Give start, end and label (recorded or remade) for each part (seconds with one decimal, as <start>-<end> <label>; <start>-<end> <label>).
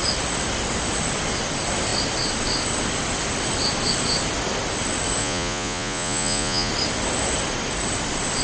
0.0-5.2 recorded; 5.2-6.7 remade; 6.7-8.4 recorded